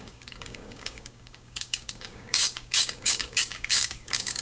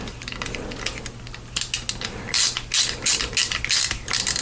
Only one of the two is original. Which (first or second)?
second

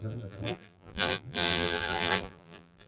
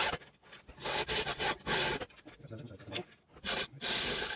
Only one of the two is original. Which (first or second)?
second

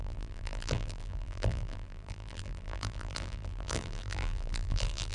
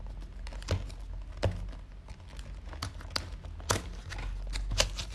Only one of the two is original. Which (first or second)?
second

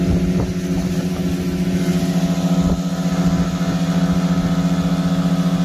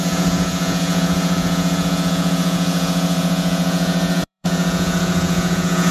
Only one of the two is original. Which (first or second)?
first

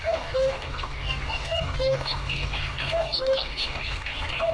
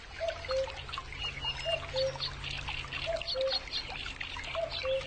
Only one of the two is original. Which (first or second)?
second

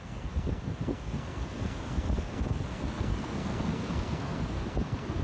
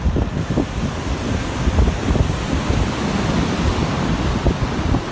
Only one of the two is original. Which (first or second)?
second